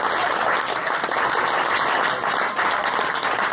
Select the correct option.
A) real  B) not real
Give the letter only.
A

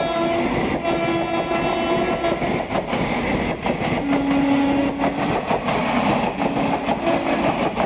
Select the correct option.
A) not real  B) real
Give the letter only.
B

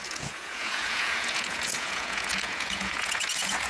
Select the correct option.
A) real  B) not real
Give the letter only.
B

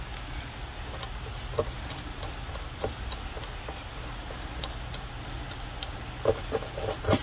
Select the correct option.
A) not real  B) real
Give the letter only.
B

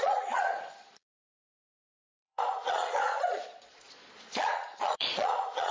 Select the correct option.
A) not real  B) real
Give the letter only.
A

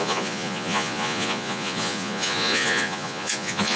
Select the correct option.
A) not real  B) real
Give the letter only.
A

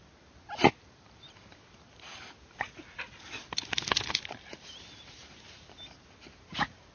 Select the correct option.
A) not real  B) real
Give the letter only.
B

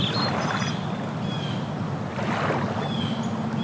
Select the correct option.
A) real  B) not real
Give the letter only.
A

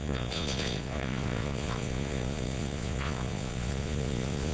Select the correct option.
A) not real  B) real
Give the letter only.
A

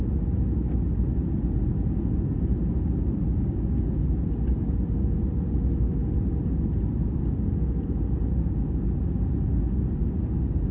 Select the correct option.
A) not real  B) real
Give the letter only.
B